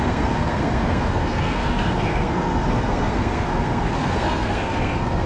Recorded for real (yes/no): no